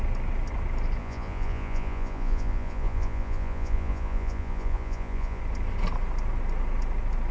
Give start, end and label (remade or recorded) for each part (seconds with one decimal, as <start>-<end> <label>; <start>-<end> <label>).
0.0-1.0 recorded; 1.0-5.4 remade; 5.4-7.3 recorded